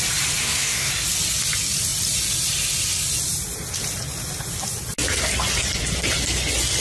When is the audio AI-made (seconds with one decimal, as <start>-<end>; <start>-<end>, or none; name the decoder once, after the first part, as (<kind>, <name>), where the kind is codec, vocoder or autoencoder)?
0.4-0.9 (codec, SNAC)